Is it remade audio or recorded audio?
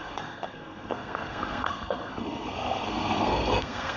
remade